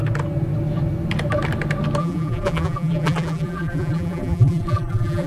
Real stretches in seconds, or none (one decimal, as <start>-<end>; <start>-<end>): 0.0-2.0